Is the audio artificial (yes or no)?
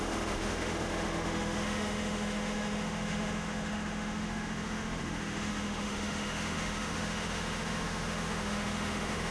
yes